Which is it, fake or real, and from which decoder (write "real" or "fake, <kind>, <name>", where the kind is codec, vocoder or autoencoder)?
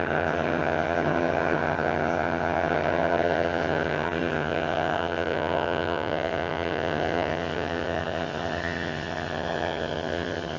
fake, vocoder, HiFi-GAN